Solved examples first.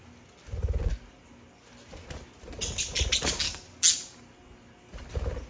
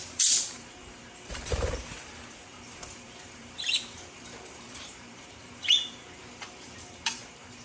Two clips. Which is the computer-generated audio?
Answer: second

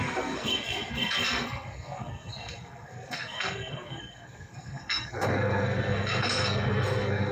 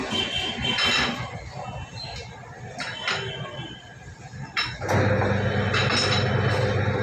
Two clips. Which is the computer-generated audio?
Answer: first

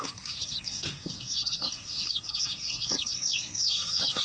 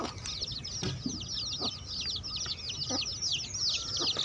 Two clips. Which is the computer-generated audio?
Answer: first